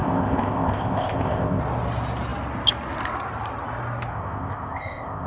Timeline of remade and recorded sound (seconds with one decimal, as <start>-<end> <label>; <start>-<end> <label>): 0.0-1.6 remade; 1.6-4.1 recorded; 4.1-5.3 remade